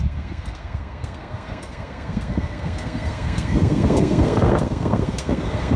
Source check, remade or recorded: remade